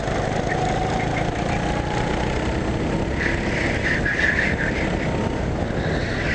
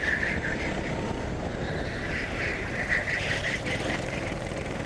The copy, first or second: second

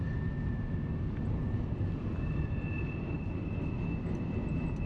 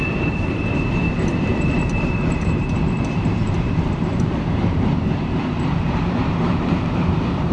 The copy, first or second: second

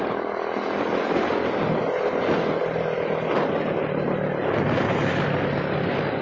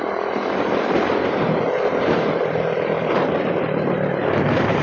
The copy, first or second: second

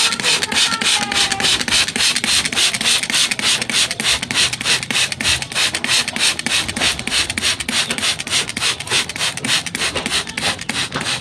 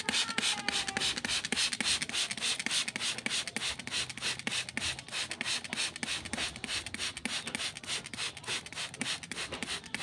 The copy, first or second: first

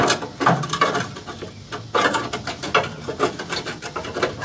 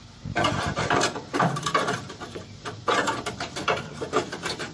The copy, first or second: second